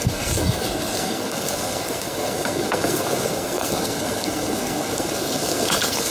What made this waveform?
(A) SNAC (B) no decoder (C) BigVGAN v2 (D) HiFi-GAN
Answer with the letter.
A